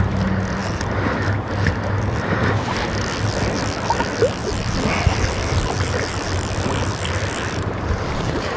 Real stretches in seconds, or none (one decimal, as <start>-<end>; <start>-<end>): 0.0-0.6; 4.0-4.4

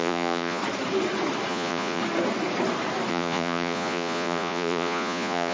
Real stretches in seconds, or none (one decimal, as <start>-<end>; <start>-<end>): 0.6-1.5; 2.0-3.1

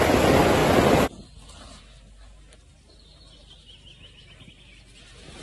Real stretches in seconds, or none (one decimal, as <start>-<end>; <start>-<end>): 0.0-5.4